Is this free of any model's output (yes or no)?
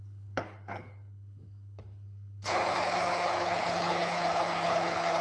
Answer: no